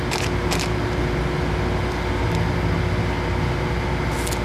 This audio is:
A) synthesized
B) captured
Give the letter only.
B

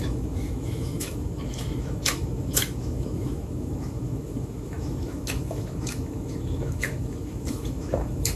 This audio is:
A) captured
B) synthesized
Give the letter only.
B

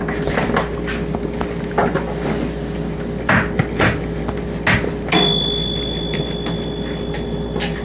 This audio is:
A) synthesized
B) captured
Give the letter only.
B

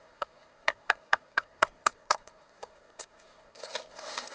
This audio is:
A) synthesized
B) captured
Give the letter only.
A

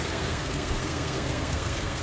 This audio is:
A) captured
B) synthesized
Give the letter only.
B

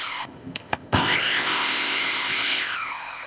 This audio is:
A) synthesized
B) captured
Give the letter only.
A